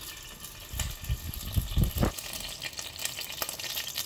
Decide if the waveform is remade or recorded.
recorded